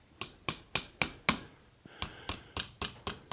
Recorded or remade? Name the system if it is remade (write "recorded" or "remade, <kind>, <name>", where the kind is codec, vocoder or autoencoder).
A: recorded